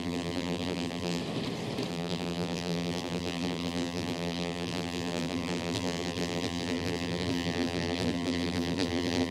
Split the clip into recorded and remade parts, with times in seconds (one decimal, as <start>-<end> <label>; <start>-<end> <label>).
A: 0.0-1.2 remade; 1.2-1.9 recorded; 1.9-9.3 remade